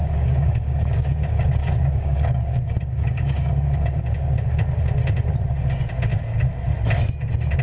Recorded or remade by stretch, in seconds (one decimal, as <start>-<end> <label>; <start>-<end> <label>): 0.0-1.1 remade; 1.1-1.6 recorded; 1.6-4.0 remade; 4.0-7.6 recorded